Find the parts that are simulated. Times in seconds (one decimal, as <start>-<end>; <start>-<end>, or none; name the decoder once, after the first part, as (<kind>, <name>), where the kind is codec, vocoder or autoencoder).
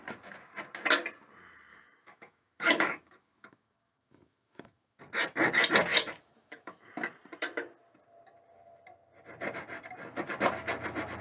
1.7-5.0 (autoencoder, DAC-VAE); 5.9-6.9